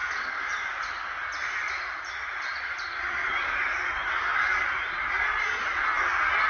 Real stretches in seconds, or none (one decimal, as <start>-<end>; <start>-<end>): 3.3-6.5